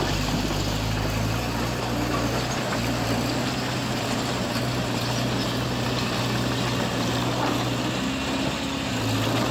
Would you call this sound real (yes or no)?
yes